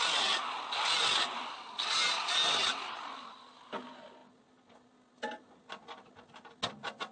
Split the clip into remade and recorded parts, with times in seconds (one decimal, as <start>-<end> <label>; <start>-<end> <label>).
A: 0.0-7.1 recorded